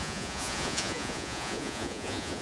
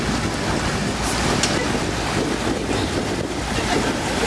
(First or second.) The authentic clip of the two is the second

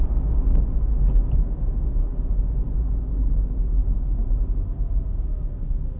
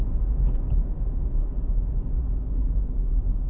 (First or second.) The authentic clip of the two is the first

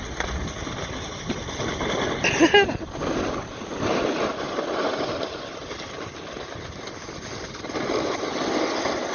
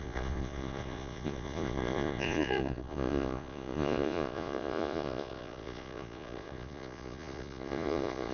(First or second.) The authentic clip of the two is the first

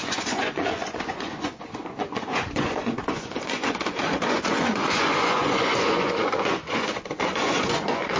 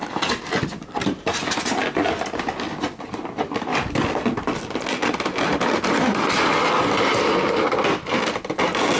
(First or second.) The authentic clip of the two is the second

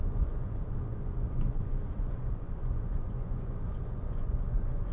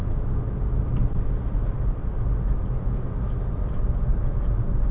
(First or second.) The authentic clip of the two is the second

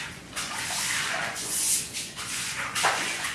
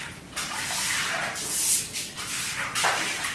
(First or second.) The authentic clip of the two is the second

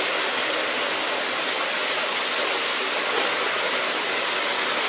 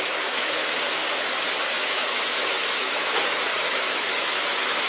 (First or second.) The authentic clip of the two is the first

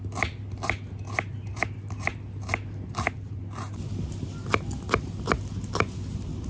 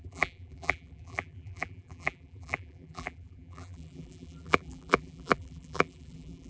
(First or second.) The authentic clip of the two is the first